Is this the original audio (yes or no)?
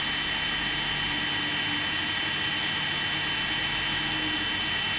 yes